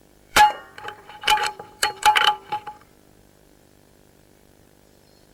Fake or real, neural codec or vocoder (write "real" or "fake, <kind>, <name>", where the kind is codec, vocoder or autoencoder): fake, vocoder, BigVGAN v2